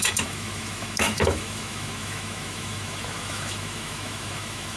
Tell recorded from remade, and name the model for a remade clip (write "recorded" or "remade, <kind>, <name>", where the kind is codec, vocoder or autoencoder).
remade, autoencoder, DAC-VAE